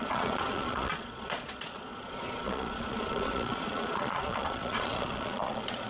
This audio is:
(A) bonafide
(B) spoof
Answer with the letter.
B